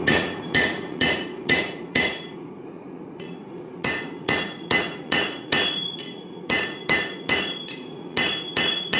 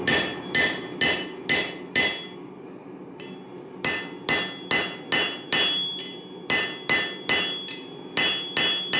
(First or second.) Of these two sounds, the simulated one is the first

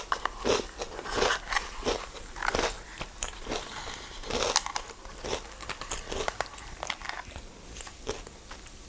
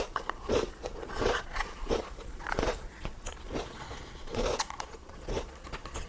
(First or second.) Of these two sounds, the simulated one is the second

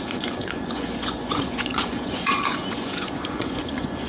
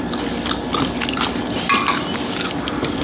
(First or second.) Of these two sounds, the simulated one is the first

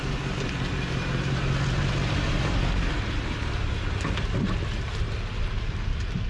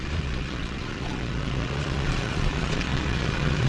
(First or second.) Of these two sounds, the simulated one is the second